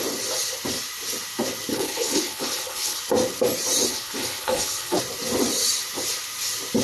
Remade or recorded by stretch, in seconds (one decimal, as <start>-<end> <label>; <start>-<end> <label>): 0.0-1.7 recorded; 1.7-3.0 remade; 3.0-3.9 recorded; 3.9-5.0 remade; 5.0-6.8 recorded